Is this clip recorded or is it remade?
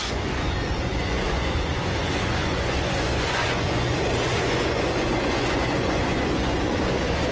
remade